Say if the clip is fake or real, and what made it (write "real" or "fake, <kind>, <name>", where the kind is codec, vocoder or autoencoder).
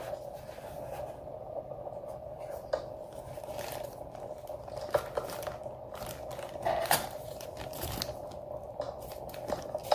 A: real